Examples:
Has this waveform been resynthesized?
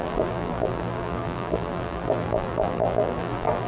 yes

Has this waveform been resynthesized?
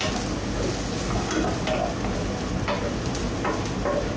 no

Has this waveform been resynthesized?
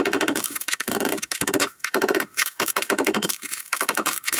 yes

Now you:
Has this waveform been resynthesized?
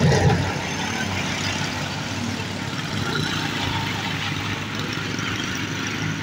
no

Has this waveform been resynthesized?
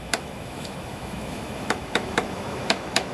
yes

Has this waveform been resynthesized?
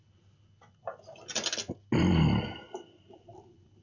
no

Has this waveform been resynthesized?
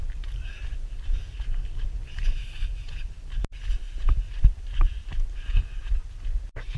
no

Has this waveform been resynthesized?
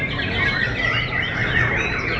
yes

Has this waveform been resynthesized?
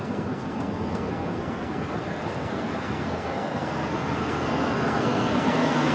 yes